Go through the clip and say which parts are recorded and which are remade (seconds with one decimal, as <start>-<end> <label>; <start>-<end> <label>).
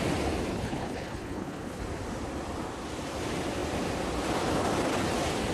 0.0-0.5 recorded; 0.5-1.8 remade; 1.8-5.5 recorded